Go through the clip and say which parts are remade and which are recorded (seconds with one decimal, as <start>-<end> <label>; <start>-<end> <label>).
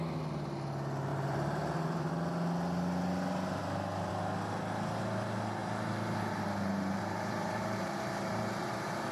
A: 0.0-1.1 recorded; 1.1-2.1 remade; 2.1-3.6 recorded; 3.6-4.1 remade; 4.1-5.6 recorded; 5.6-9.1 remade